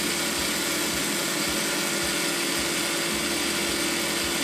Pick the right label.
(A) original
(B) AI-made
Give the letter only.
A